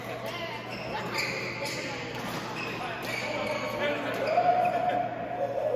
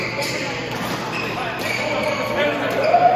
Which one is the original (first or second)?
first